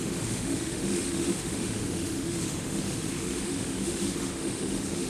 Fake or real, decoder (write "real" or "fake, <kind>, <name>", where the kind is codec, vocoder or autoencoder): fake, autoencoder, DAC-VAE